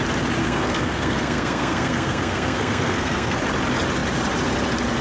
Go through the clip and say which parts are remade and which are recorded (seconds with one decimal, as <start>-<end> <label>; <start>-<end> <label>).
0.0-0.4 recorded; 0.4-3.4 remade; 3.4-5.0 recorded